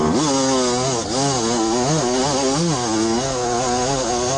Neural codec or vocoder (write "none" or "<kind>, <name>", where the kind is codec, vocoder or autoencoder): none